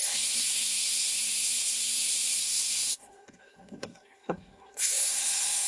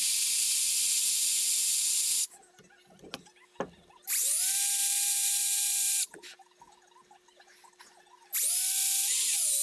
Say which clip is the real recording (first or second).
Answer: second